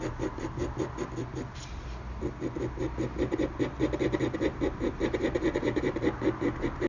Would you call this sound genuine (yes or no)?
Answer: yes